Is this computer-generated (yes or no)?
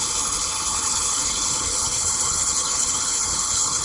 yes